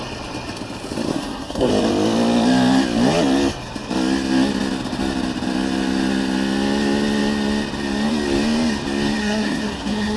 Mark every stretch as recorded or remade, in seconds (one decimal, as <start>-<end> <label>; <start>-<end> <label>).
0.0-1.1 recorded; 1.1-1.7 remade; 1.7-9.2 recorded; 9.2-10.2 remade